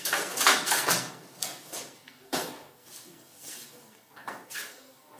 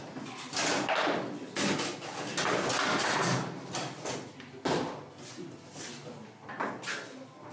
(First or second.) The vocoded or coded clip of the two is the first